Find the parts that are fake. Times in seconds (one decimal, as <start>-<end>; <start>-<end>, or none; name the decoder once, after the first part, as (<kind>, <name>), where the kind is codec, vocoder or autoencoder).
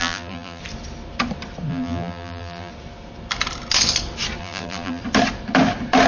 0.0-0.6 (vocoder, BigVGAN v2); 1.7-2.7; 4.4-5.0